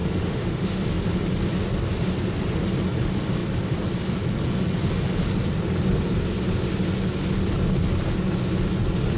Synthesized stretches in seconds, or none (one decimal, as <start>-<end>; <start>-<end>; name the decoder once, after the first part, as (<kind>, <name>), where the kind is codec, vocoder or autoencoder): 0.0-0.8 (autoencoder, DAC-VAE)